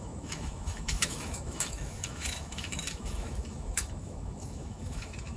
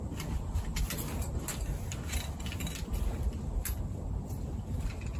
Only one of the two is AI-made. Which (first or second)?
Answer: first